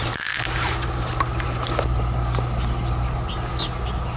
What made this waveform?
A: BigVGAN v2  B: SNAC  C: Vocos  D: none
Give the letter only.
D